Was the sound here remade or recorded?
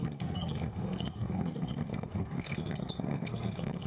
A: remade